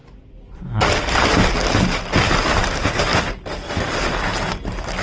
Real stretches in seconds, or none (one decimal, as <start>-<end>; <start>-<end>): 0.0-1.0; 1.6-2.5